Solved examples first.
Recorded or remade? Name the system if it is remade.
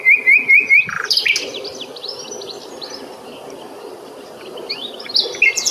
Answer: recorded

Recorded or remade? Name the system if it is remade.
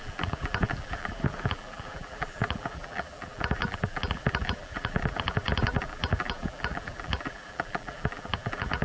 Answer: remade, vocoder, BigVGAN v2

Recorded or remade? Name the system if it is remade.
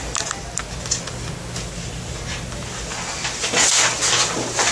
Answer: recorded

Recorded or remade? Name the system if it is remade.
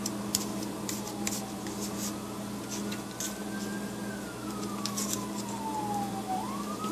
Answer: recorded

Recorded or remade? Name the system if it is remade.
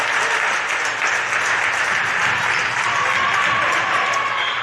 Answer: recorded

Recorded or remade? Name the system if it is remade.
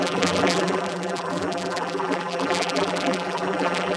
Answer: remade, vocoder, BigVGAN v2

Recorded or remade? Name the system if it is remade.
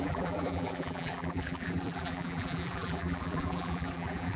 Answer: remade, vocoder, BigVGAN v2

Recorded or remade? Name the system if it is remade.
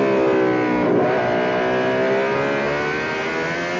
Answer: recorded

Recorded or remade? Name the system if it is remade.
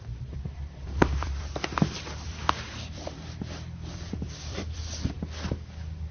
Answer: remade, vocoder, BigVGAN v2